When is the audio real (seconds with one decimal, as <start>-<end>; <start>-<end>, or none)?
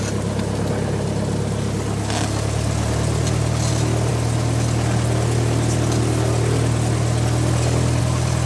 0.0-8.5